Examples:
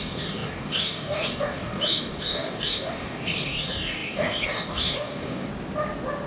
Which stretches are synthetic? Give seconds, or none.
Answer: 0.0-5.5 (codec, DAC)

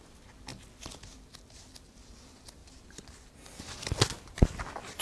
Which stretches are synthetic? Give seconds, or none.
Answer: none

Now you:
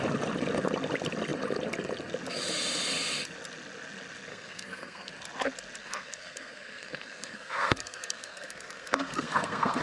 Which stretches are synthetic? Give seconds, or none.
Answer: 4.3-5.1 (codec, SNAC); 5.8-9.8

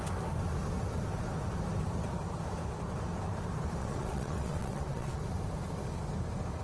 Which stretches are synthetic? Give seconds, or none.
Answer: 3.8-5.2 (vocoder, WaveNeXt)

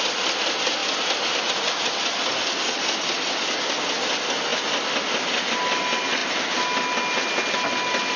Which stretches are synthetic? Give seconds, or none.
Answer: none

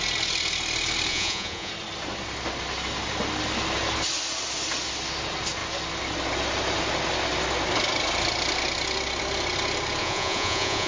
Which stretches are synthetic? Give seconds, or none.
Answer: 1.1-1.7 (vocoder, Vocos); 10.0-10.9